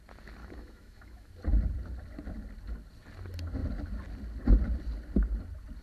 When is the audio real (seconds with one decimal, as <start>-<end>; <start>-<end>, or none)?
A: 0.0-0.4; 1.3-5.8